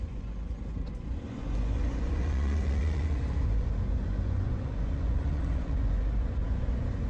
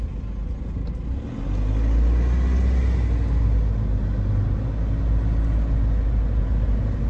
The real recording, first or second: second